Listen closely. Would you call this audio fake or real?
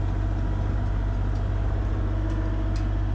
real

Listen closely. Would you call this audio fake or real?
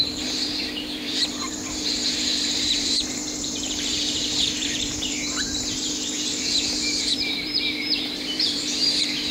fake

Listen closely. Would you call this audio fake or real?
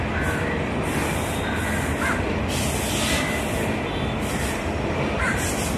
real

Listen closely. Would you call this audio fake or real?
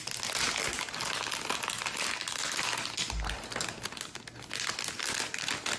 real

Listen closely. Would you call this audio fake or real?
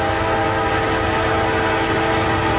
real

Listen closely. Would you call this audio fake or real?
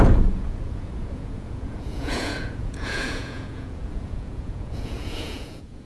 fake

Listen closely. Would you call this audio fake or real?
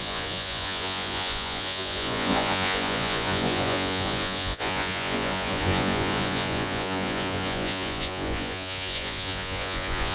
fake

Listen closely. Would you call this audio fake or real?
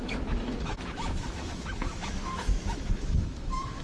fake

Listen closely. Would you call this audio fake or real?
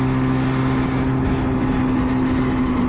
real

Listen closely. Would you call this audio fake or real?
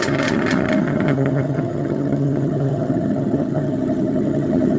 fake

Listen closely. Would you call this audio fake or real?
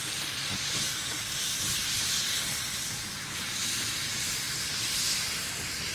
real